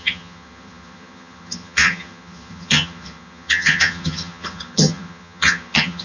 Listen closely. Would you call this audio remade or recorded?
remade